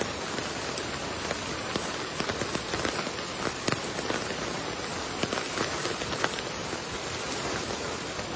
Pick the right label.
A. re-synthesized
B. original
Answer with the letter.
B